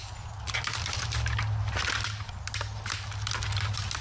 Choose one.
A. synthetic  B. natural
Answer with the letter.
B